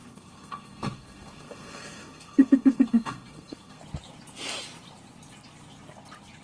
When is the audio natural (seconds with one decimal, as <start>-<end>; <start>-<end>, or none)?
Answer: 3.8-6.4